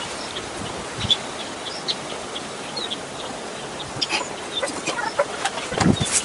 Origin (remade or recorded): recorded